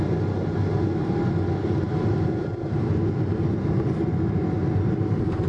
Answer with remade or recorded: recorded